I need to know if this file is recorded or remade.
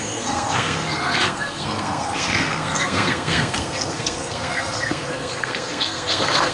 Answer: remade